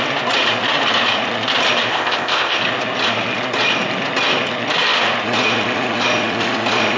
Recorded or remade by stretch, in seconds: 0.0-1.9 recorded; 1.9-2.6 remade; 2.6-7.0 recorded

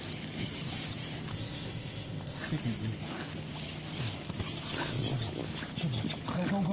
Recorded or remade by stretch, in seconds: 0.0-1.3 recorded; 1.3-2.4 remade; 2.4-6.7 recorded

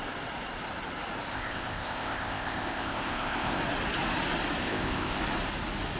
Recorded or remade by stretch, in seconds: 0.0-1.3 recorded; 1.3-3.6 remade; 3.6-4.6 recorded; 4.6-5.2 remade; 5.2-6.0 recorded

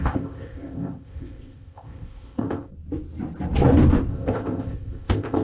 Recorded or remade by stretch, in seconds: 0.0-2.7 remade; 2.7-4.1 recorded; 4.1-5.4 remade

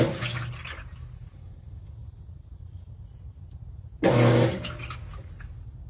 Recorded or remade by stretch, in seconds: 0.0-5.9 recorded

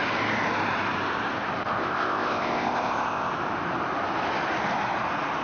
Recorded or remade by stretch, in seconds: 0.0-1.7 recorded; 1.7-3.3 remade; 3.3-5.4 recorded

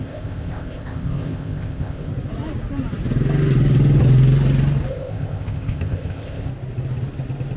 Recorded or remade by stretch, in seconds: 0.0-2.1 remade; 2.1-4.9 recorded; 4.9-6.5 remade; 6.5-7.6 recorded

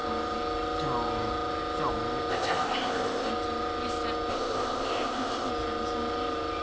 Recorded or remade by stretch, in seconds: 0.0-2.3 recorded; 2.3-3.3 remade; 3.3-4.3 recorded; 4.3-5.5 remade; 5.5-6.6 recorded